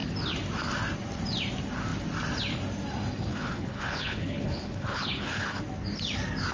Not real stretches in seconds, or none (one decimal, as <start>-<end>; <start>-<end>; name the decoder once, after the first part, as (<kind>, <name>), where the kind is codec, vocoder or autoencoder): 3.3-5.6 (codec, HILCodec)